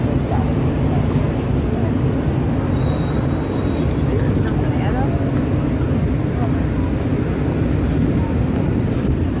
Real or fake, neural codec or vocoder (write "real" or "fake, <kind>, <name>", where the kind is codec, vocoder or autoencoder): real